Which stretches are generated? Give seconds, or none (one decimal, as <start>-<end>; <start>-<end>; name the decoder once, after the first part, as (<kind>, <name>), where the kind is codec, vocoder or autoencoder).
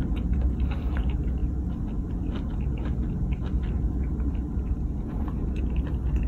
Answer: 0.0-1.4 (vocoder, BigVGAN v2); 5.2-6.3